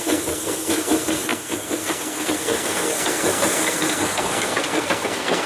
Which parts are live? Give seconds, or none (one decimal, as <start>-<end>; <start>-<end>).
none